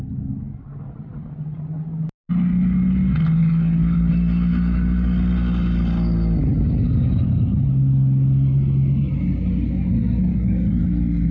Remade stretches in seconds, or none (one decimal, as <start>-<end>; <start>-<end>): 3.4-4.1; 10.3-10.8